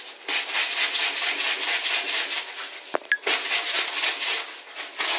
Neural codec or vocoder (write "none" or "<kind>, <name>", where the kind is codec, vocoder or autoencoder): none